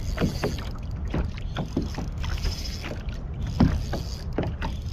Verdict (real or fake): real